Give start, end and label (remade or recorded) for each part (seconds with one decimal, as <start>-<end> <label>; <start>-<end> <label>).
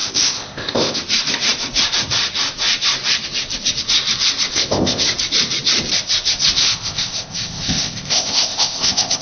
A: 0.0-1.0 remade; 1.0-4.5 recorded; 4.5-5.0 remade; 5.0-6.6 recorded; 6.6-9.2 remade